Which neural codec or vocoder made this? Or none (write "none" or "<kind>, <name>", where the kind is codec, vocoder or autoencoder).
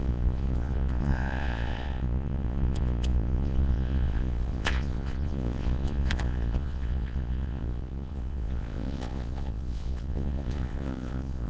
vocoder, Vocos